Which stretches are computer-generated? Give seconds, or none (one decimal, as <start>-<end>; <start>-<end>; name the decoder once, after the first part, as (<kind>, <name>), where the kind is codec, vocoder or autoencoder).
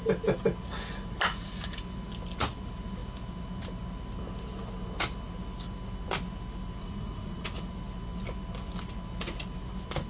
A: 1.3-1.8 (vocoder, Vocos); 6.8-7.7